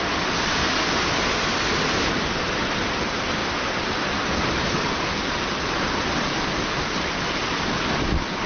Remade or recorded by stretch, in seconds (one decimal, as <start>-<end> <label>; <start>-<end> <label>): 0.0-3.4 recorded; 3.4-5.0 remade; 5.0-8.5 recorded